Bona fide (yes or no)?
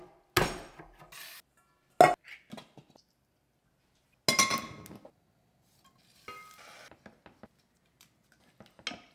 yes